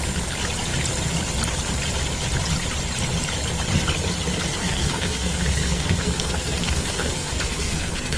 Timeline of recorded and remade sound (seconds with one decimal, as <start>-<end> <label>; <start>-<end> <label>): 0.0-4.6 recorded; 4.6-8.2 remade